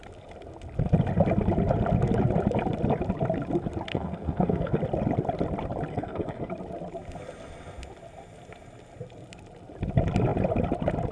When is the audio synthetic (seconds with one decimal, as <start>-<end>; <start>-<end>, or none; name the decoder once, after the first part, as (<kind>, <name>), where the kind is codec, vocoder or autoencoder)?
3.9-4.8 (codec, SNAC); 5.9-6.5